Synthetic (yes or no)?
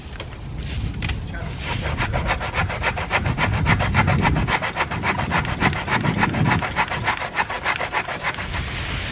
yes